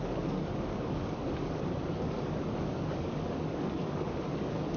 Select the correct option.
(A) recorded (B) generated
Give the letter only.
B